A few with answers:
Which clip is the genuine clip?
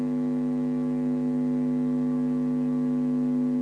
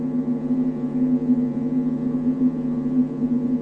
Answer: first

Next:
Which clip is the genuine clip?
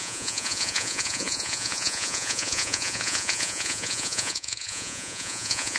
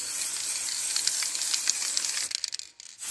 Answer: second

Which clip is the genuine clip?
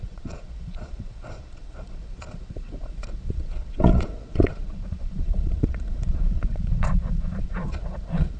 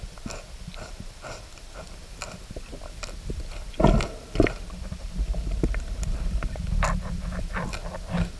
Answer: second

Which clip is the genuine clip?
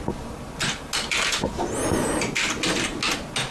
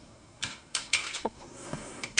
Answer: first